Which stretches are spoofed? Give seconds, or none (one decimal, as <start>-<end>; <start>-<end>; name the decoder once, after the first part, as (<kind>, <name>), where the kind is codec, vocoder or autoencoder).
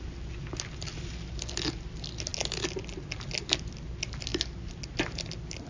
none